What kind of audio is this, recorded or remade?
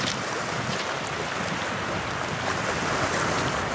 recorded